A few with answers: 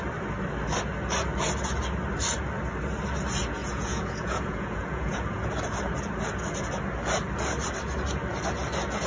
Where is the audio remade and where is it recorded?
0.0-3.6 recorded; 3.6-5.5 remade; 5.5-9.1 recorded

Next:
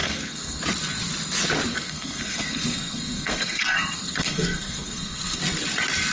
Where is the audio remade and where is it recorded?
0.0-0.6 remade; 0.6-1.7 recorded; 1.7-5.4 remade; 5.4-6.1 recorded

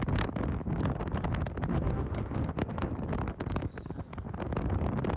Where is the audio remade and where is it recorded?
0.0-1.7 recorded; 1.7-2.9 remade; 2.9-5.2 recorded

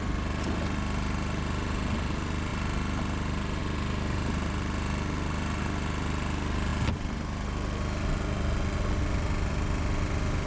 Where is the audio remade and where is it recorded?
0.0-10.5 recorded